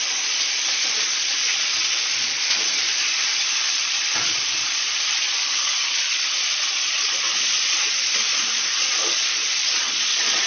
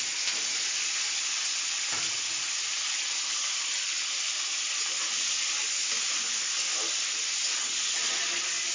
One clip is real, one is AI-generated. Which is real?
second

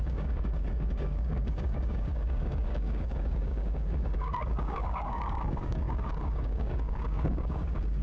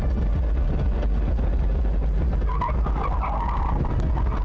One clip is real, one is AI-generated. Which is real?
second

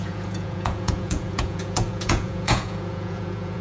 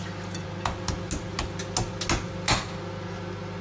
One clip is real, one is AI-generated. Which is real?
second